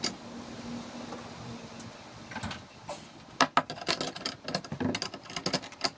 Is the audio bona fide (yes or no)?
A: yes